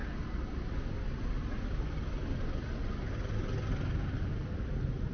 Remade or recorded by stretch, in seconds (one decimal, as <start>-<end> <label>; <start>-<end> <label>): 0.0-5.1 recorded

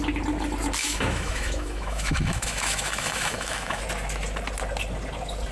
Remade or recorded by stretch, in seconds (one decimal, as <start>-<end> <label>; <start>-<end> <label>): 0.0-0.8 recorded; 0.8-3.8 remade; 3.8-5.5 recorded

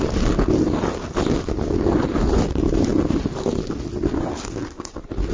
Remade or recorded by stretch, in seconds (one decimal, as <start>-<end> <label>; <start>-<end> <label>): 0.0-5.3 recorded

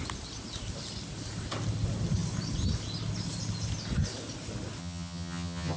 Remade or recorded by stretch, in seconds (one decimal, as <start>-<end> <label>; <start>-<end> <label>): 0.0-4.8 recorded; 4.8-5.8 remade

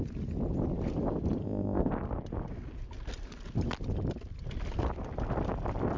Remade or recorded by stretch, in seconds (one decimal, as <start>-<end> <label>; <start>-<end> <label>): 0.0-1.4 recorded; 1.4-1.9 remade; 1.9-6.0 recorded

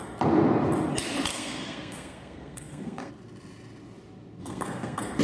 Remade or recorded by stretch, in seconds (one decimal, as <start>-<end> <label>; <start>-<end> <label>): 0.0-1.3 recorded; 1.3-3.1 remade; 3.1-4.4 recorded; 4.4-5.2 remade

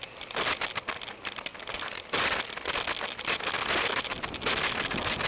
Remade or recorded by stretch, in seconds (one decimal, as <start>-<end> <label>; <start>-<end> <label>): 0.0-5.3 recorded

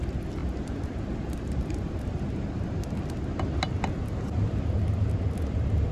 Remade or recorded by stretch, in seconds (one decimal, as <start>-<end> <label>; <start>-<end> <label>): 0.0-0.4 recorded; 0.4-2.0 remade; 2.0-5.9 recorded